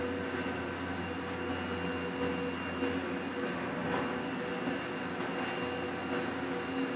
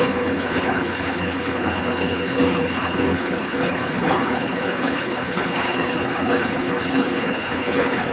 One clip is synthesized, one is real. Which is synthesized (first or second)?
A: second